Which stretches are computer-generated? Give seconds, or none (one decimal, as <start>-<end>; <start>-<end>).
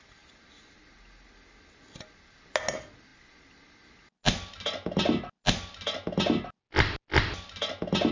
none